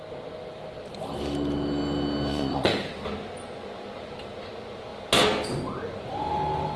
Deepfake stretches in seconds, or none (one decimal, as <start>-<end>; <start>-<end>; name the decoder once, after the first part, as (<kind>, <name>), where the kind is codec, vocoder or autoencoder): 2.3-2.9 (vocoder, Vocos)